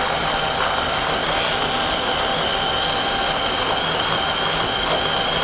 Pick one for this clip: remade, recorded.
recorded